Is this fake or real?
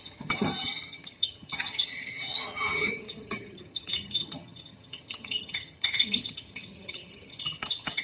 fake